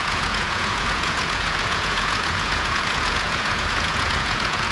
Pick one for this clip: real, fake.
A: fake